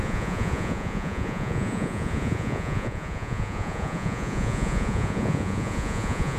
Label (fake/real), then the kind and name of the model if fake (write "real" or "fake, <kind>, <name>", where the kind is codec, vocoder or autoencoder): fake, vocoder, Vocos